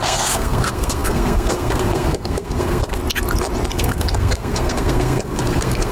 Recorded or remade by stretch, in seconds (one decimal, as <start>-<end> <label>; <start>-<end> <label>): 0.0-3.0 remade; 3.0-3.7 recorded; 3.7-5.9 remade

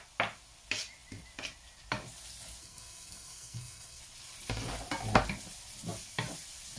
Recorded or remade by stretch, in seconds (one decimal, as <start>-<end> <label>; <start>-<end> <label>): 0.0-2.6 recorded; 2.6-4.0 remade; 4.0-6.8 recorded

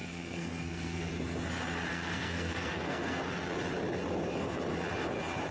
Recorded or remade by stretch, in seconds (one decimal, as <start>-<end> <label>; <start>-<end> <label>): 0.0-1.1 remade; 1.1-1.9 recorded; 1.9-3.2 remade; 3.2-5.5 recorded